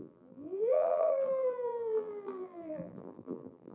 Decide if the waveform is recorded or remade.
remade